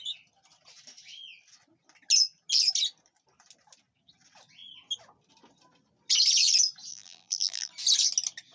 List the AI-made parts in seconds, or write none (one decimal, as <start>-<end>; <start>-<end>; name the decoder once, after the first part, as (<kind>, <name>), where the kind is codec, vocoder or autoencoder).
6.9-7.7 (vocoder, BigVGAN v2)